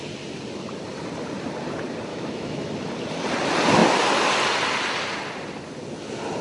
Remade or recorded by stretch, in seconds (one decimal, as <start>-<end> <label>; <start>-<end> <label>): 0.0-2.1 recorded; 2.1-2.7 remade; 2.7-6.4 recorded